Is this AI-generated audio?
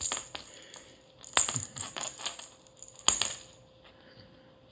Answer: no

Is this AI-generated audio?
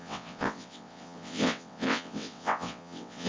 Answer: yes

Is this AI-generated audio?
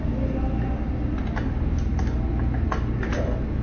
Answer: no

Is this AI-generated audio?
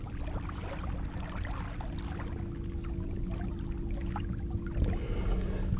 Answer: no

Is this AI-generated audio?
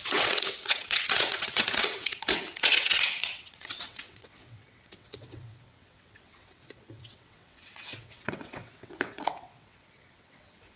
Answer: yes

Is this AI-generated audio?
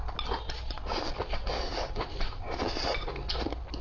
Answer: no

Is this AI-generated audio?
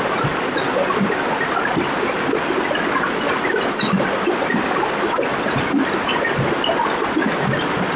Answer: no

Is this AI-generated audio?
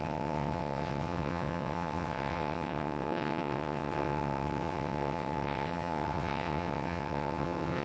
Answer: yes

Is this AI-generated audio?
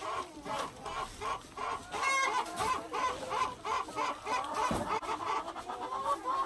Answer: no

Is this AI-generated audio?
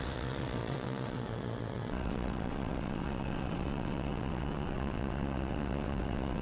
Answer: yes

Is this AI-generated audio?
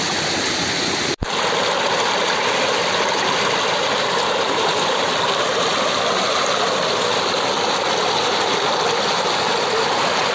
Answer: no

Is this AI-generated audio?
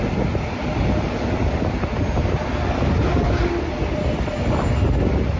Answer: no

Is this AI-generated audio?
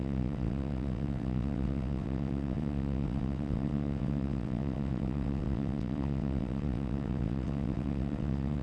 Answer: yes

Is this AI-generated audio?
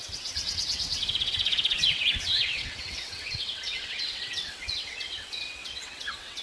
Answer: yes